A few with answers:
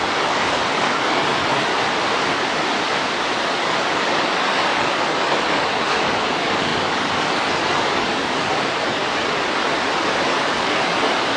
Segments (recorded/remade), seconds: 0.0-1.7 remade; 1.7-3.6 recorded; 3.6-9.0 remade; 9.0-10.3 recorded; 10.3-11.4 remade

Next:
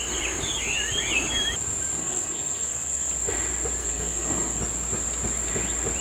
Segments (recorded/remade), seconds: 0.0-2.0 recorded; 2.0-3.1 remade; 3.1-3.8 recorded; 3.8-4.6 remade; 4.6-6.0 recorded

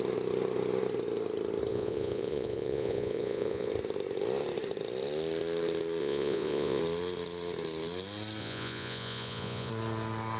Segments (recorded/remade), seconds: 0.0-1.7 recorded; 1.7-3.7 remade; 3.7-6.0 recorded; 6.0-6.8 remade; 6.8-8.4 recorded; 8.4-9.7 remade; 9.7-10.4 recorded

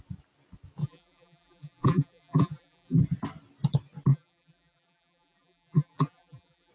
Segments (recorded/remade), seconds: 0.0-0.8 recorded; 0.8-3.0 remade; 3.0-4.1 recorded; 4.1-6.7 remade

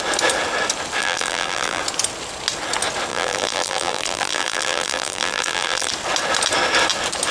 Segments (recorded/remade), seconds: 0.0-1.0 recorded; 1.0-1.8 remade; 1.8-3.1 recorded; 3.1-5.9 remade; 5.9-7.3 recorded

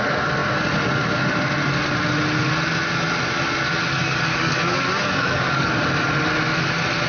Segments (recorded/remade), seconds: 0.0-4.0 recorded; 4.0-4.6 remade; 4.6-5.2 recorded; 5.2-5.7 remade; 5.7-7.1 recorded

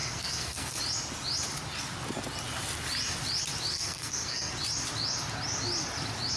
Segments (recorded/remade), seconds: 0.0-0.8 remade; 0.8-3.7 recorded; 3.7-4.5 remade; 4.5-6.4 recorded